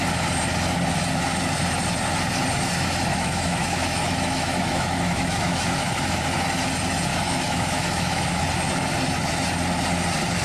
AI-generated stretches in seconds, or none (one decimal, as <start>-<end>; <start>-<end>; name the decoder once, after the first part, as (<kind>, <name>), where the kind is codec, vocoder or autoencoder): 3.1-6.2 (autoencoder, DAC-VAE); 7.1-8.4